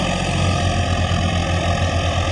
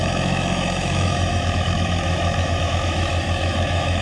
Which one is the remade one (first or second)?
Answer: second